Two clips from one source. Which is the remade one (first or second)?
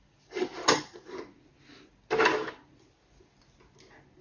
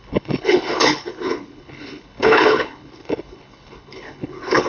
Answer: second